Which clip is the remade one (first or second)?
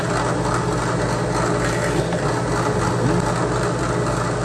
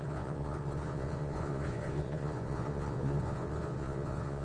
second